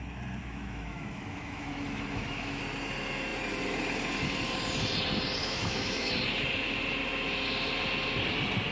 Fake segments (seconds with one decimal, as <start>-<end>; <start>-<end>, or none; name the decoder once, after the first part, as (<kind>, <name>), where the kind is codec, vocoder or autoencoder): 0.4-2.6 (autoencoder, DAC-VAE); 5.4-6.1